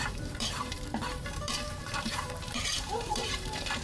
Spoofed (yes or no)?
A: yes